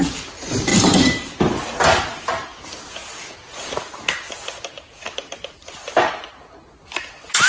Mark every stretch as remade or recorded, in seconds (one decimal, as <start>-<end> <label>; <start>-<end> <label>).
0.0-7.5 recorded